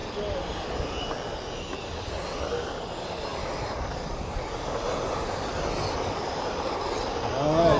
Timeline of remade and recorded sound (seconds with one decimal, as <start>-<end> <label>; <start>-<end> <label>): 0.0-7.8 recorded

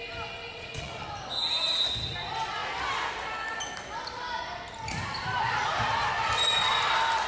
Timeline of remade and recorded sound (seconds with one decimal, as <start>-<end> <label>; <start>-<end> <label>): 0.0-0.5 recorded; 0.5-1.1 remade; 1.1-7.3 recorded